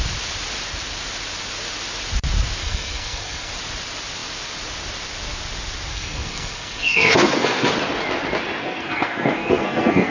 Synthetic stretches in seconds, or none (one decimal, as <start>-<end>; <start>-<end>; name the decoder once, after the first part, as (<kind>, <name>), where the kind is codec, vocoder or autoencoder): 2.6-3.5 (codec, SNAC); 5.9-7.7; 8.6-10.1